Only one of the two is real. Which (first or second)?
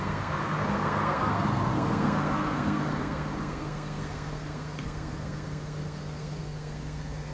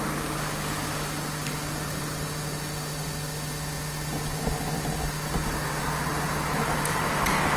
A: second